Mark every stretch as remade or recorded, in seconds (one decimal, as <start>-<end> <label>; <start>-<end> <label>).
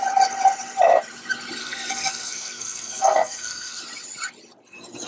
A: 0.0-1.6 recorded; 1.6-3.8 remade; 3.8-5.1 recorded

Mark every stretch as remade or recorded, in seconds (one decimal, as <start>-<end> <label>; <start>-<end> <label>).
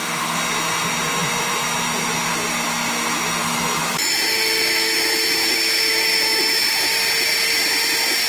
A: 0.0-3.4 recorded; 3.4-6.7 remade; 6.7-8.3 recorded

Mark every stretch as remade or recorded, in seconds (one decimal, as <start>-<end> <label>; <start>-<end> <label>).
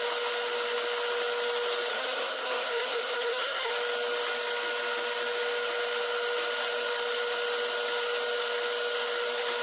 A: 0.0-1.9 recorded; 1.9-3.7 remade; 3.7-9.6 recorded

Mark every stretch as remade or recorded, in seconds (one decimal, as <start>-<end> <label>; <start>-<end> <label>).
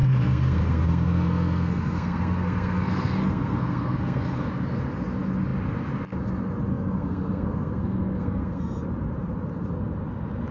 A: 0.0-4.5 remade; 4.5-6.7 recorded; 6.7-8.8 remade; 8.8-10.5 recorded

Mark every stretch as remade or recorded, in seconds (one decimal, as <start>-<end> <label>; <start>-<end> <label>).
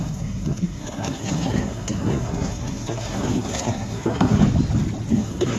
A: 0.0-4.4 remade; 4.4-5.1 recorded; 5.1-5.6 remade